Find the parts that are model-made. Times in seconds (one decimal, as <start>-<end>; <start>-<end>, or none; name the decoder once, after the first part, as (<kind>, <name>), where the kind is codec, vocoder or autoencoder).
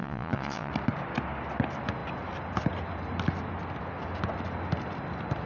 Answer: 0.0-0.7 (vocoder, Vocos)